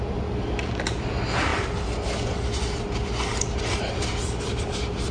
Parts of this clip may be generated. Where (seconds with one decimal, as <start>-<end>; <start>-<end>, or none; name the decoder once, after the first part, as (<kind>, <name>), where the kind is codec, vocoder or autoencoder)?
none